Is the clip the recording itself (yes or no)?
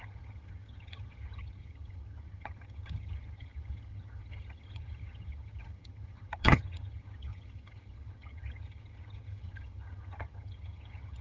no